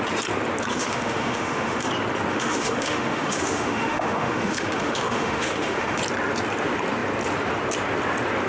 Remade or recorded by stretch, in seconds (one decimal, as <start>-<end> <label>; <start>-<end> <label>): 0.0-0.7 recorded; 0.7-1.9 remade; 1.9-2.3 recorded; 2.3-6.0 remade; 6.0-8.5 recorded